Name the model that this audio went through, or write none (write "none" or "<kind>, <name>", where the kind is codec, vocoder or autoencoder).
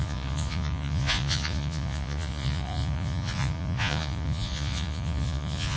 vocoder, Vocos